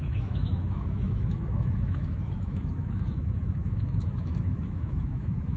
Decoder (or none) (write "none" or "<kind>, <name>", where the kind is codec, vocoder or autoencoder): autoencoder, DAC-VAE